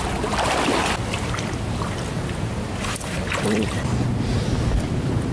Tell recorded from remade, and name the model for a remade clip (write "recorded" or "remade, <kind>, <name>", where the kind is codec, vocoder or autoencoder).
recorded